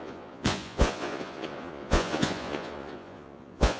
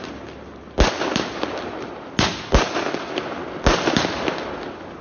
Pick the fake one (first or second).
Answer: first